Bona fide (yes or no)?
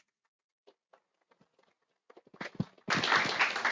yes